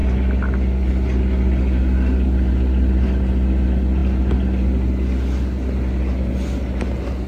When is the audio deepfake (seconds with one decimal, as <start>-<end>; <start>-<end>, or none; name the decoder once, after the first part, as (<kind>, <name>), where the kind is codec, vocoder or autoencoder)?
none